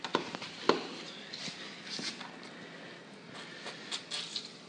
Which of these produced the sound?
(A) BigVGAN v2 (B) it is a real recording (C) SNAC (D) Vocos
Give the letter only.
B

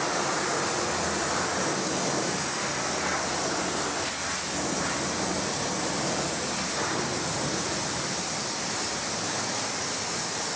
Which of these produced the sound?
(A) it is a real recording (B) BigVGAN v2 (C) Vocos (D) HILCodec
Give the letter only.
A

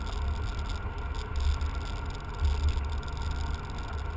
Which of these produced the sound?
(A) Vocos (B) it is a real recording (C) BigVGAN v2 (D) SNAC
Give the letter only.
B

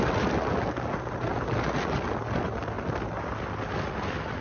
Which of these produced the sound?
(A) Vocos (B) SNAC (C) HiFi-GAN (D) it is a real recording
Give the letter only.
D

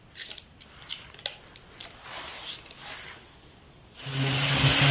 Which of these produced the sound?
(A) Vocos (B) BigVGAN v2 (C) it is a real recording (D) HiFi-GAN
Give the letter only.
C